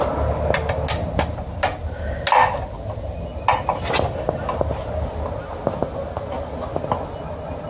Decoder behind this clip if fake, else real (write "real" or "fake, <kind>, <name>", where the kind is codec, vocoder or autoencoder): real